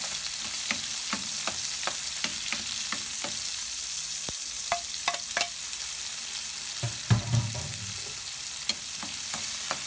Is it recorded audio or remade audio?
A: recorded